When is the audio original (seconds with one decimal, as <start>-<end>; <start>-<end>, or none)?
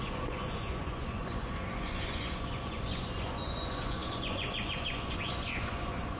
none